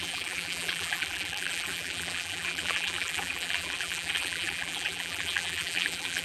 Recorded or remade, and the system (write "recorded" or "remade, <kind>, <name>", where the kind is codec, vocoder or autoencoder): remade, vocoder, BigVGAN v2